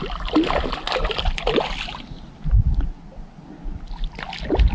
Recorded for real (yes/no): yes